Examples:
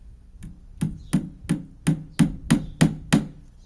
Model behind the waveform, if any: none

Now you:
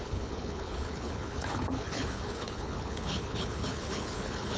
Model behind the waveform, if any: codec, HILCodec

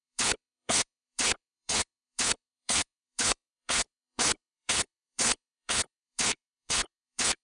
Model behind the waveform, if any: codec, HILCodec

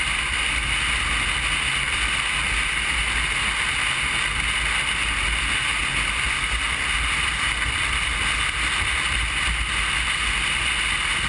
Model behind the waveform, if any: none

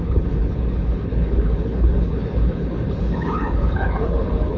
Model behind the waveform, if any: codec, HILCodec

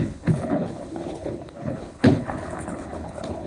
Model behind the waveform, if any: codec, HILCodec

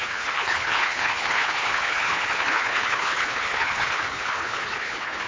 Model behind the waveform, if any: codec, HILCodec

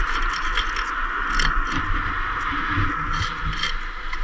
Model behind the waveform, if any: none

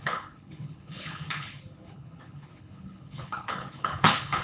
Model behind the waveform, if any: codec, HILCodec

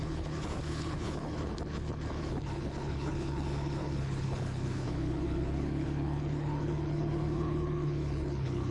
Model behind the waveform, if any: codec, HILCodec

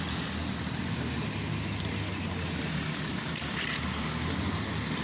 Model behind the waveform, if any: none